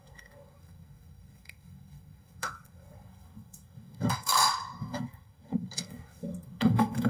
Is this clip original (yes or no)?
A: no